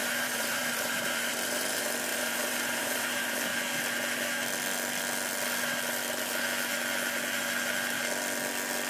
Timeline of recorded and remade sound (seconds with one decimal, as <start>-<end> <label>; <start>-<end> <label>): 0.0-3.5 remade; 3.5-8.9 recorded